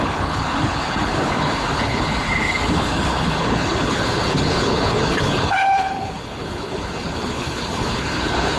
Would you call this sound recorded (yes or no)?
no